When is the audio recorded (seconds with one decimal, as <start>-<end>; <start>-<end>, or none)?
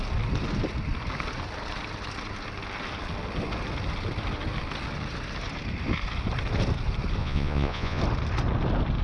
0.0-7.2; 8.0-9.0